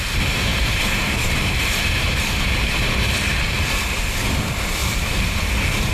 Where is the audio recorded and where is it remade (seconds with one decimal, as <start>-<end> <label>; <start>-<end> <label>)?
0.0-0.5 recorded; 0.5-3.8 remade; 3.8-4.8 recorded; 4.8-5.4 remade; 5.4-5.9 recorded